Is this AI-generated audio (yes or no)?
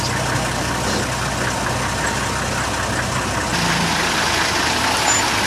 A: no